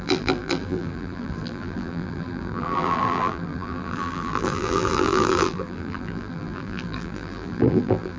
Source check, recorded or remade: remade